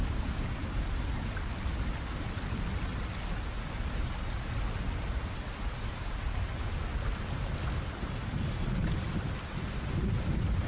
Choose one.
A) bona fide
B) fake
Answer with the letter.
A